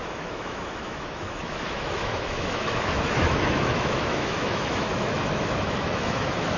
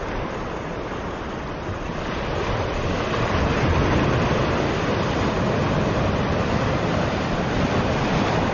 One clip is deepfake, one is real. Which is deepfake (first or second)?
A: first